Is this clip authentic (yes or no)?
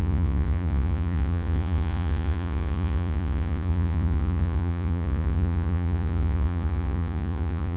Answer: no